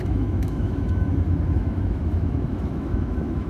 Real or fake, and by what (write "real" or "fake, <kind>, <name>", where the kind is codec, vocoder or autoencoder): fake, autoencoder, DAC-VAE